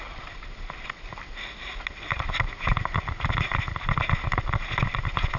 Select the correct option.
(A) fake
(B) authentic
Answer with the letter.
B